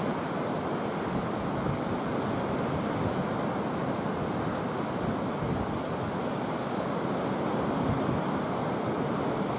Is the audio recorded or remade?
recorded